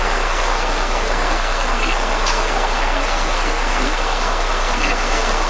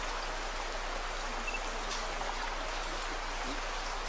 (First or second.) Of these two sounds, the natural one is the second